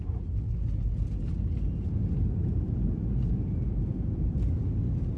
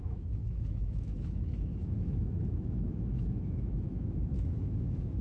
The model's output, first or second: second